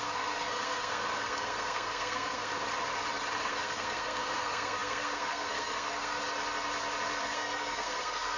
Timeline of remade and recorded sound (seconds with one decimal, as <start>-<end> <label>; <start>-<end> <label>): 0.0-2.5 remade; 2.5-3.4 recorded; 3.4-6.2 remade; 6.2-7.2 recorded; 7.2-8.4 remade